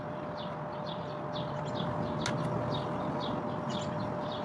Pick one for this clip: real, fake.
real